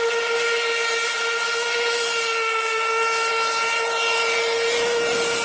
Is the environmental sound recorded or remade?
recorded